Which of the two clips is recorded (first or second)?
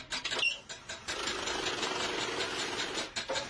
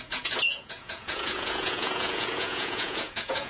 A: first